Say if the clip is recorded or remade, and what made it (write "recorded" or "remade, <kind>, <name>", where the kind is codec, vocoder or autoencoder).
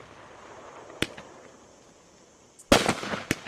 recorded